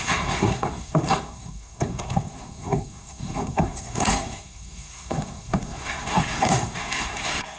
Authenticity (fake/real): fake